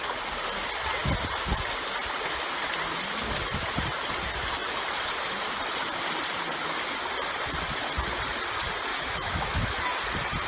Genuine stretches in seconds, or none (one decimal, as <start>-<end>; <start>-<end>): 0.0-8.9; 9.8-10.5